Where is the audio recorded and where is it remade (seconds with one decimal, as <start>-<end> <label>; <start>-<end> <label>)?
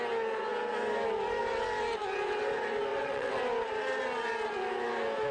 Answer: 0.0-2.9 recorded; 2.9-3.4 remade; 3.4-5.3 recorded